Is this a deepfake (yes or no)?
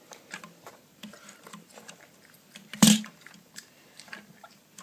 yes